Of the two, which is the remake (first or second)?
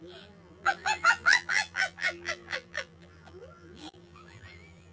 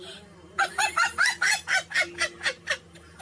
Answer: first